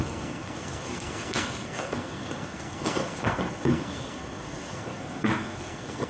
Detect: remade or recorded remade